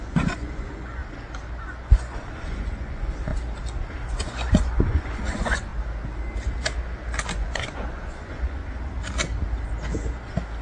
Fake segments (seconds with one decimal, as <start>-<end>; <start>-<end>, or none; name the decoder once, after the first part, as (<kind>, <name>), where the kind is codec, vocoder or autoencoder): 0.0-1.0 (vocoder, Vocos); 1.6-3.3; 4.1-5.7; 7.3-8.6